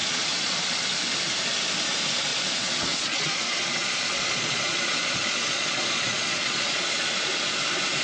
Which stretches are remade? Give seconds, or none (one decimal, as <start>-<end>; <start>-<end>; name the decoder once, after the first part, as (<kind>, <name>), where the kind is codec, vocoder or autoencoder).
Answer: 0.0-0.8 (vocoder, Vocos); 2.3-7.1